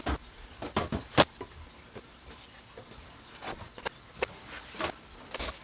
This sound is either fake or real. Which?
real